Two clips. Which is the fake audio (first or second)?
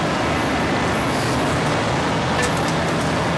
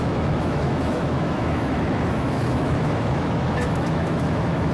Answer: second